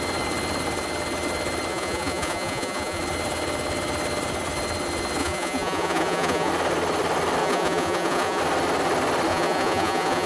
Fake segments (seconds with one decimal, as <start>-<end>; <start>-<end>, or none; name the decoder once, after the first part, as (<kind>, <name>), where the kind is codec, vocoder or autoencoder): 1.7-3.0 (vocoder, Vocos); 5.2-6.5; 7.4-8.4; 9.3-10.3